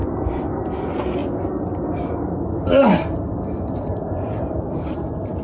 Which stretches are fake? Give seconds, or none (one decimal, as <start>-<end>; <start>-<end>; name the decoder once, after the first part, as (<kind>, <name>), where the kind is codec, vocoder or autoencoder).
0.6-5.4 (vocoder, BigVGAN v2)